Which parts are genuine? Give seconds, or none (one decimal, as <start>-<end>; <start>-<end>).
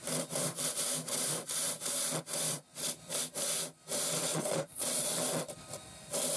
0.0-4.3; 5.2-6.4